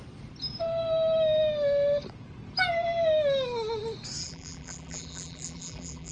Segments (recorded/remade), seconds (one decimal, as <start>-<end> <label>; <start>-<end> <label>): 0.0-4.2 recorded; 4.2-6.1 remade